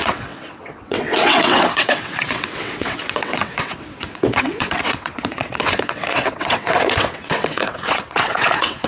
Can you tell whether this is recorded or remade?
remade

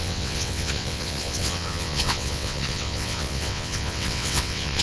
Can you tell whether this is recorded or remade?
remade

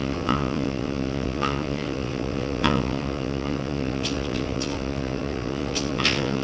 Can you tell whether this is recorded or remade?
remade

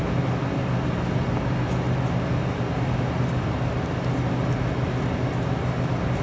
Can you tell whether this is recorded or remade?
recorded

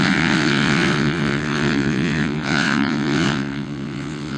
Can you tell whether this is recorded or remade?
remade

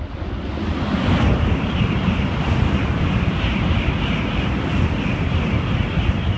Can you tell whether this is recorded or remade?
recorded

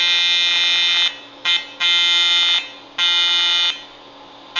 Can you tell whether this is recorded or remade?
recorded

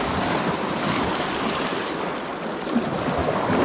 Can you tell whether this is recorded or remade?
recorded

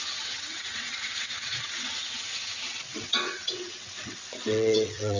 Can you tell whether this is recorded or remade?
remade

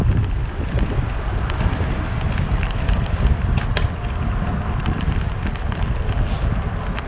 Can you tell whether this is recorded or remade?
recorded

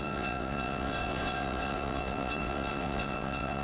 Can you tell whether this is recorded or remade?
remade